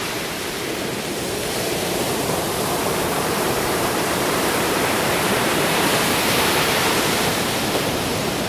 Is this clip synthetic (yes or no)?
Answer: yes